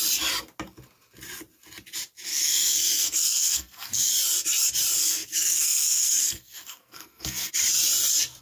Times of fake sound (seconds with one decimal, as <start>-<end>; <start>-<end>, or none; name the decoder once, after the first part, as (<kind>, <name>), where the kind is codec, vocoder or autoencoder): 2.3-4.1 (codec, SNAC); 5.0-7.5